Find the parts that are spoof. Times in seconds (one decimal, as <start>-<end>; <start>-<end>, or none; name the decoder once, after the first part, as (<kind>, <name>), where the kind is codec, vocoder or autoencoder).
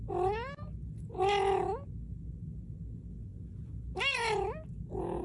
none